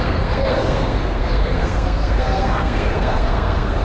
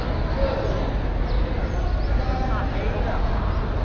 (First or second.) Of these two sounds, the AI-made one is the first